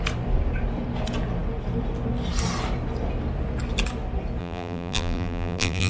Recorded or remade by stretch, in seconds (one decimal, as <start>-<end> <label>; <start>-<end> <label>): 0.0-4.4 recorded; 4.4-5.9 remade